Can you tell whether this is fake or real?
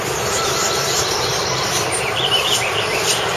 fake